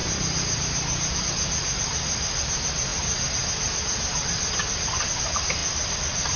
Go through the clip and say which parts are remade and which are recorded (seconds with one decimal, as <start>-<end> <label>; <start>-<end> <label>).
0.0-6.4 recorded